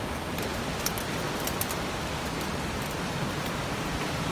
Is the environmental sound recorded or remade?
recorded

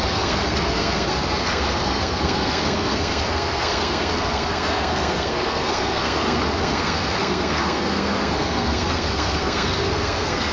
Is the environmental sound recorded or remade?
remade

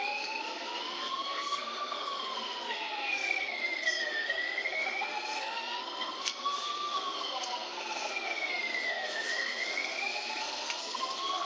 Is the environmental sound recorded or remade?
remade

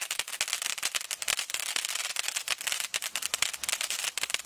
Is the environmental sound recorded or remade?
recorded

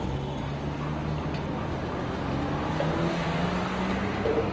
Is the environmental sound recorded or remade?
recorded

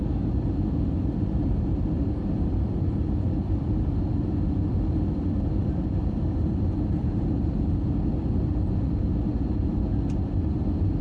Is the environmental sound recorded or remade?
recorded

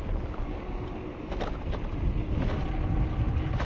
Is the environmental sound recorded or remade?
recorded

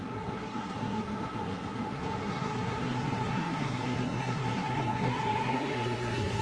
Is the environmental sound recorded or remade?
remade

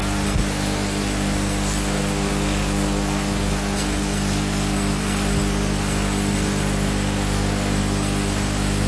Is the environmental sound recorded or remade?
remade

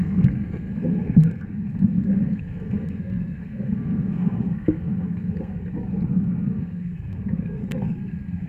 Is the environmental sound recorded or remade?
remade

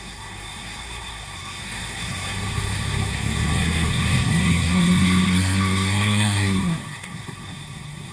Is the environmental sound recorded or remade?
remade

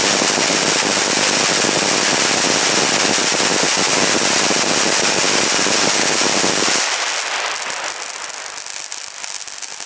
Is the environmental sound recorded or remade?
recorded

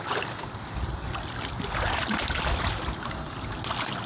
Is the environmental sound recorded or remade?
recorded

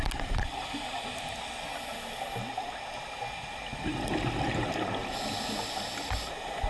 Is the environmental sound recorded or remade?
recorded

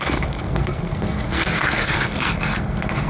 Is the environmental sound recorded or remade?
remade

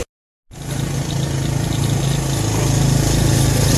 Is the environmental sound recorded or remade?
recorded